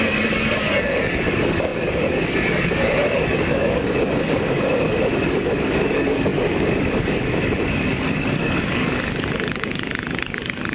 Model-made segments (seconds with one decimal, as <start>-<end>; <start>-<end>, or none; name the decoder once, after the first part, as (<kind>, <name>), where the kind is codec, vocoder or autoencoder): 0.0-10.7 (codec, DAC)